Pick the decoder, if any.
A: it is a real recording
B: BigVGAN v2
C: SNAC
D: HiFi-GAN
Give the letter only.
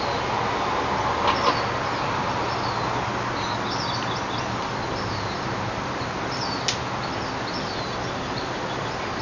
A